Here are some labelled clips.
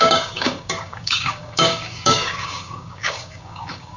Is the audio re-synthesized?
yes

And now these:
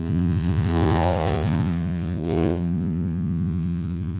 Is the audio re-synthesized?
yes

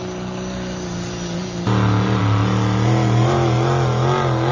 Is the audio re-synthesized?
no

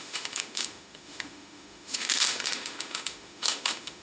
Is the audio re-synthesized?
yes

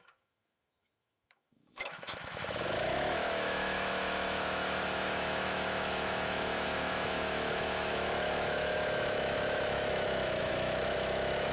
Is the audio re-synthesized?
yes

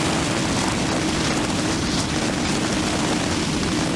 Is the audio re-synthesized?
no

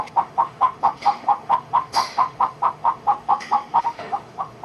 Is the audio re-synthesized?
yes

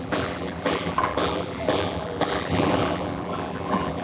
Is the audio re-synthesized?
yes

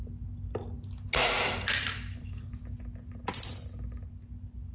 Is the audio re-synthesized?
no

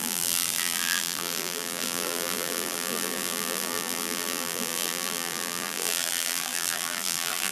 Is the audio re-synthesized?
yes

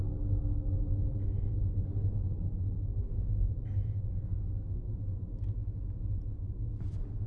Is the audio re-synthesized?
no